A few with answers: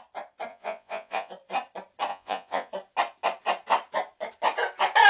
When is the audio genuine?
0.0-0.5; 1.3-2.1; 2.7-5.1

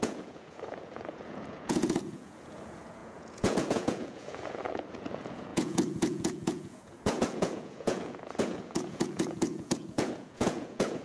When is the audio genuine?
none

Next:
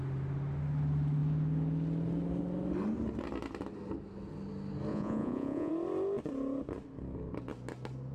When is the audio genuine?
0.0-4.9; 5.7-8.1

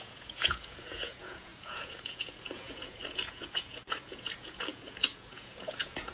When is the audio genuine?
none